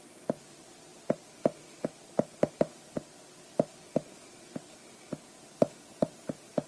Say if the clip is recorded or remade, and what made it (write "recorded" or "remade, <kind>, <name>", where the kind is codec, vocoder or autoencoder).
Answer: remade, vocoder, BigVGAN v2